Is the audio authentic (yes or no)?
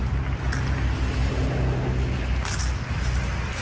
yes